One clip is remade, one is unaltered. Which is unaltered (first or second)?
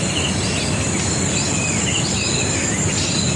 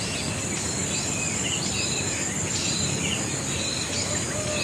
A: second